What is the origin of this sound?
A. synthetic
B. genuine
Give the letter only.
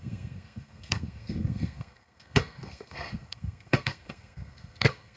A